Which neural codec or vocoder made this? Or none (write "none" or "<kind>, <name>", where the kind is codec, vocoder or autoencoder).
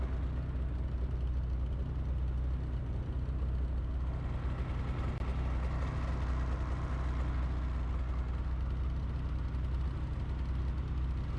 none